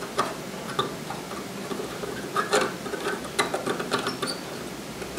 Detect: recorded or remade recorded